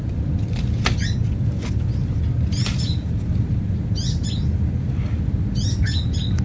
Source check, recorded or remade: recorded